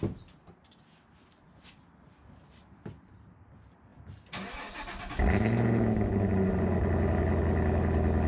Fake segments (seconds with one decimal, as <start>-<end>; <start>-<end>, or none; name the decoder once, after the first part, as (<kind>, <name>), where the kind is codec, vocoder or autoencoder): none